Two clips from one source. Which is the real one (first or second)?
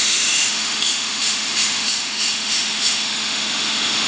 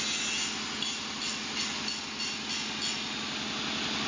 second